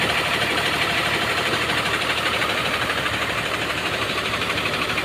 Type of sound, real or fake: fake